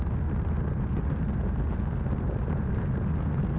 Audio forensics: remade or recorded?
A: recorded